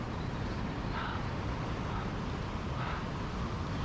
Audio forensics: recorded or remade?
recorded